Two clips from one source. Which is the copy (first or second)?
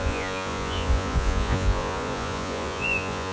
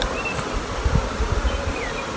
first